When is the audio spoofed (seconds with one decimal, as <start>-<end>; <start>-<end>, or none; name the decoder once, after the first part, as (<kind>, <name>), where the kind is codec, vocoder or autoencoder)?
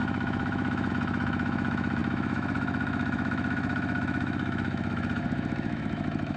0.0-6.4 (autoencoder, DAC-VAE)